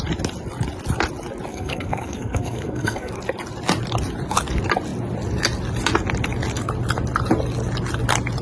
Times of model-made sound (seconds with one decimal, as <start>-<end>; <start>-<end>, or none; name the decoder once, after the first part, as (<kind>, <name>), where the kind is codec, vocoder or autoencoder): 1.5-3.1 (codec, SNAC)